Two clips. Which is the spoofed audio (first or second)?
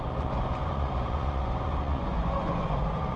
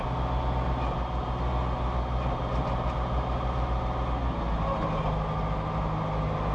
first